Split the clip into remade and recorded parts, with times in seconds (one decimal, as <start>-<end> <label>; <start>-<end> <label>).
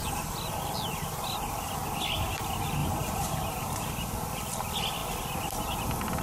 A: 0.0-2.8 recorded; 2.8-3.9 remade; 3.9-6.2 recorded